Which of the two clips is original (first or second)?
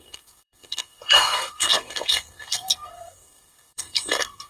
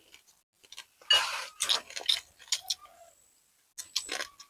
second